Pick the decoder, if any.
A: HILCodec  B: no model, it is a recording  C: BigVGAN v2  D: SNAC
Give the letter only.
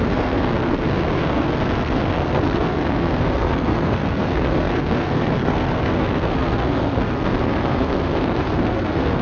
D